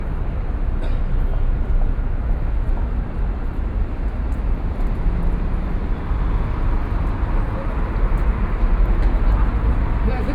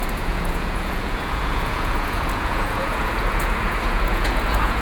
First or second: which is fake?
second